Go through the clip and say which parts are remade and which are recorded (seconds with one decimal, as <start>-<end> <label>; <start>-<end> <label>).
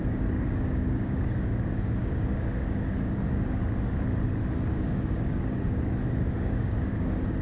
0.0-3.6 remade; 3.6-4.7 recorded; 4.7-7.4 remade